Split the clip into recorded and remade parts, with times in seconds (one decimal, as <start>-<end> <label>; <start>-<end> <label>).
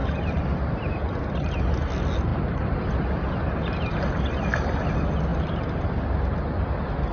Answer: 0.0-1.2 remade; 1.2-2.3 recorded; 2.3-4.3 remade; 4.3-5.3 recorded; 5.3-5.9 remade; 5.9-7.1 recorded